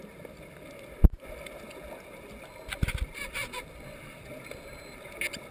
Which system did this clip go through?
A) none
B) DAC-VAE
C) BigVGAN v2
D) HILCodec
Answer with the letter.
A